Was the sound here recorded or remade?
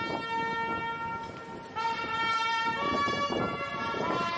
recorded